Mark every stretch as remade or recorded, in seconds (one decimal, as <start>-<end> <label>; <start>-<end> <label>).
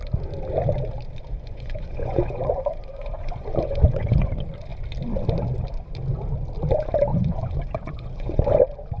0.0-1.3 recorded; 1.3-4.3 remade; 4.3-7.1 recorded; 7.1-8.4 remade; 8.4-9.0 recorded